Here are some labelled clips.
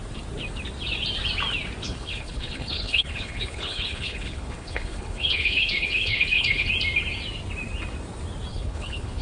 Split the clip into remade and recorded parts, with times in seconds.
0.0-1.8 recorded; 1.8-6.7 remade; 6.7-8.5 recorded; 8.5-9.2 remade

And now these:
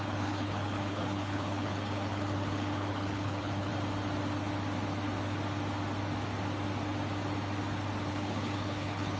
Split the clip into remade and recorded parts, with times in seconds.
0.0-3.7 remade; 3.7-8.1 recorded; 8.1-9.2 remade